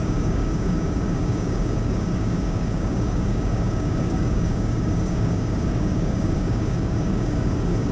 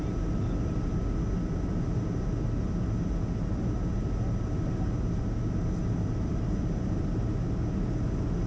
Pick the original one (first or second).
second